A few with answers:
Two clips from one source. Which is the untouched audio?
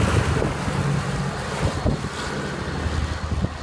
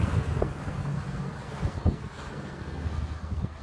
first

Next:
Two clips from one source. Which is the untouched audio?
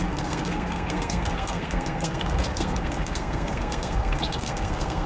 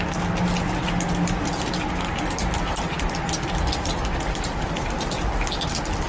second